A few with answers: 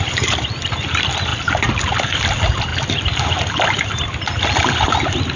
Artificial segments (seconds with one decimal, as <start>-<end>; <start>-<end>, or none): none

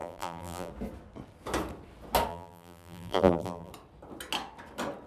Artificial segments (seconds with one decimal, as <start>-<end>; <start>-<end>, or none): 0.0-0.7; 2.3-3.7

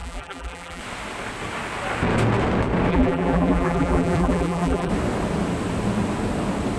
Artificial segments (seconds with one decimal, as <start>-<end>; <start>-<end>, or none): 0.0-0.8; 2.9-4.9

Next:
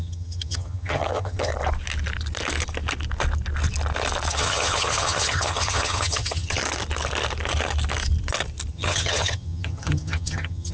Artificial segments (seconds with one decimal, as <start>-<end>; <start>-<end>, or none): 0.0-1.5; 4.3-6.6; 8.7-10.7